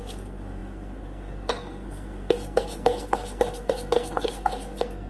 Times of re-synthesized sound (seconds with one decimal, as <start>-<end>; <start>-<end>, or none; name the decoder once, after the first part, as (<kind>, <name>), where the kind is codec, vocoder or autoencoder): 0.0-5.1 (codec, SNAC)